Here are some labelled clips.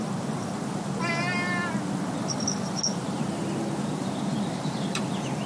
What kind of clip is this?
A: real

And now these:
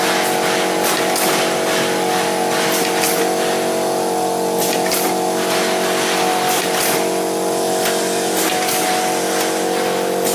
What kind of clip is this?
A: real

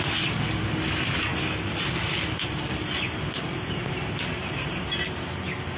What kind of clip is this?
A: real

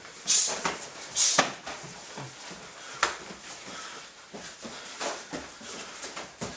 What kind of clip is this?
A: real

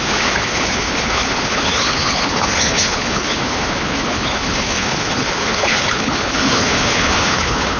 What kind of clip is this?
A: fake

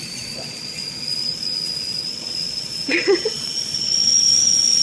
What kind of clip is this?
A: fake